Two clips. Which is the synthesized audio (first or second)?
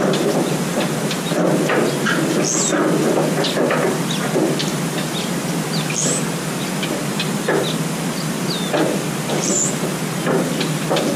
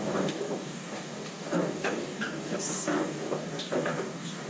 second